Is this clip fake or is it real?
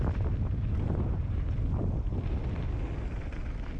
real